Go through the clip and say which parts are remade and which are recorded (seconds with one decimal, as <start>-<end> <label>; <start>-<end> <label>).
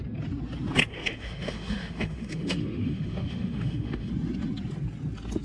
0.0-0.9 recorded; 0.9-4.1 remade; 4.1-5.4 recorded